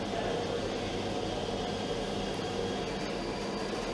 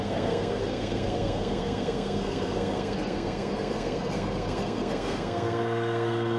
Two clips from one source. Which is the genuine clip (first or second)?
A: first